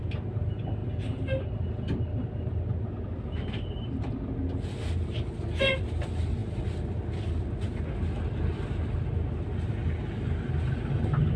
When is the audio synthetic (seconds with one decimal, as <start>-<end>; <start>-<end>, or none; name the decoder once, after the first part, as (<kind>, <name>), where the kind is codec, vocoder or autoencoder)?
none